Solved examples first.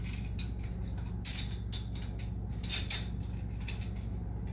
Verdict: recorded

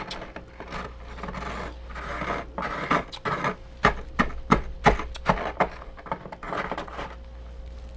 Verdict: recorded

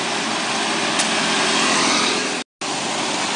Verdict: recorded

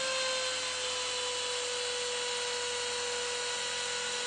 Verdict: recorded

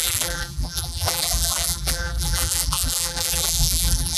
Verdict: remade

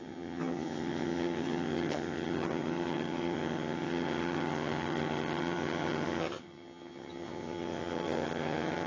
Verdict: remade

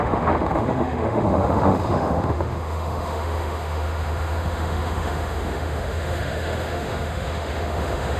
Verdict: remade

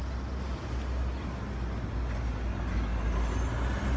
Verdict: recorded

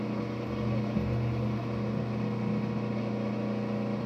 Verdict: recorded